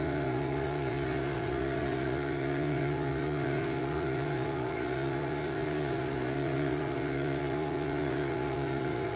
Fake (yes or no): yes